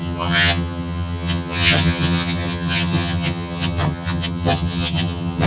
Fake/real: fake